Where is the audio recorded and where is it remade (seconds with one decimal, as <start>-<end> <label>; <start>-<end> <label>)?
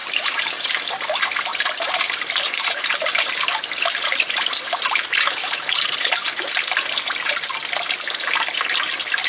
0.0-0.7 remade; 0.7-1.5 recorded; 1.5-6.4 remade; 6.4-9.3 recorded